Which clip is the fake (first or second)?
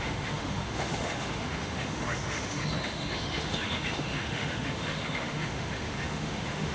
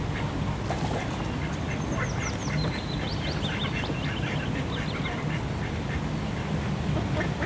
first